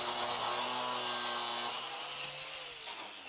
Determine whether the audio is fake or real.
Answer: real